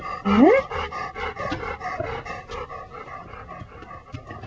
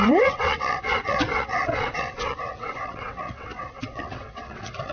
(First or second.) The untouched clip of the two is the first